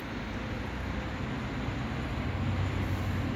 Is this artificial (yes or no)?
no